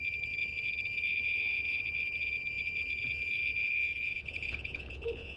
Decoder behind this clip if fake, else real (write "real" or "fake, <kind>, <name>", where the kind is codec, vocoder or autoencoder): fake, vocoder, Vocos